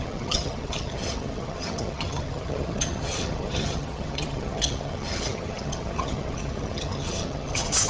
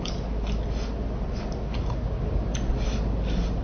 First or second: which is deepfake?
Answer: first